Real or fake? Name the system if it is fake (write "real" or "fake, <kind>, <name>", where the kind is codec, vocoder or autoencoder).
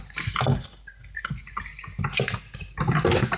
real